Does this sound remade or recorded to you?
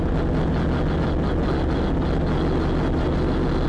recorded